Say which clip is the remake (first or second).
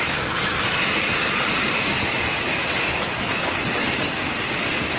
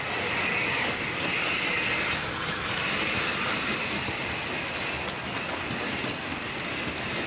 first